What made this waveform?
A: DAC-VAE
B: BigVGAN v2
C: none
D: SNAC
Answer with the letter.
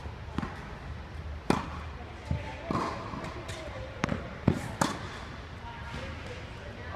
C